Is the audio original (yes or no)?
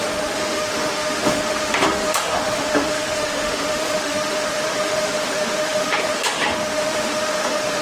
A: no